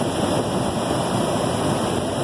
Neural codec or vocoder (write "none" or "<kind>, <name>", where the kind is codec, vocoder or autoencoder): none